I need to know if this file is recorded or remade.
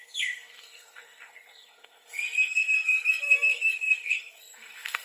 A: remade